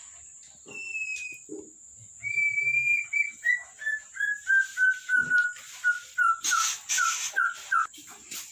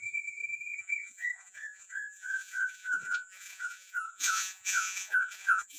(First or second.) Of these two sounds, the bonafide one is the first